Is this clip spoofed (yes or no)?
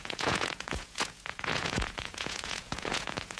yes